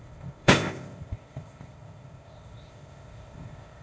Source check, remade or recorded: remade